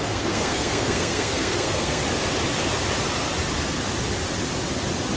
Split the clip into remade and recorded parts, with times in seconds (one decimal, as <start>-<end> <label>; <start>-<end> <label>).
0.0-2.0 remade; 2.0-5.2 recorded